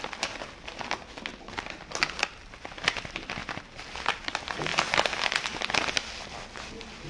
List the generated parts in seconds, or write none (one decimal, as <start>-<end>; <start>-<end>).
none